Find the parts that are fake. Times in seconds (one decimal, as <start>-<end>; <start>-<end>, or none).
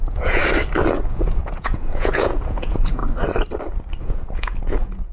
0.0-0.4; 1.1-3.0; 4.0-5.1